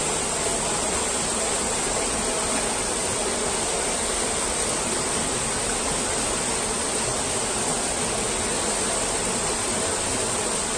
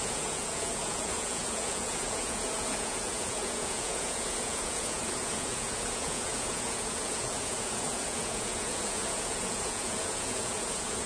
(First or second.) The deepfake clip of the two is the second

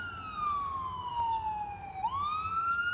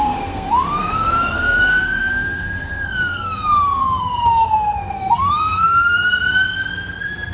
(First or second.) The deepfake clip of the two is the second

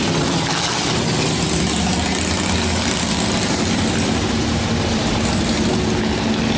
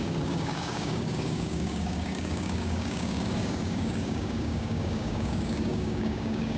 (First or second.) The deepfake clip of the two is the second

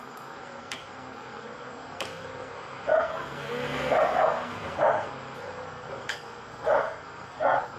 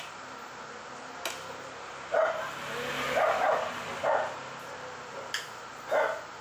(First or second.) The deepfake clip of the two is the first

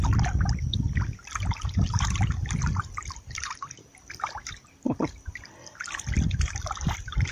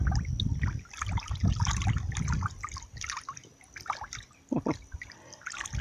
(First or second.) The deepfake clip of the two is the first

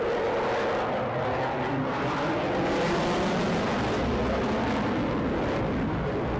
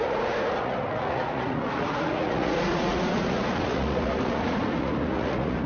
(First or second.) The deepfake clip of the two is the second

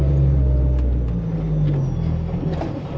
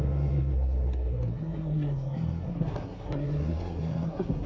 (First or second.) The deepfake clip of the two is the second